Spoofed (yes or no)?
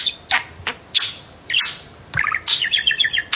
no